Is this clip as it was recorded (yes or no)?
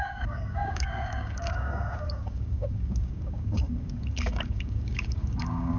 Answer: no